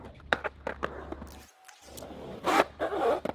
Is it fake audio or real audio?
real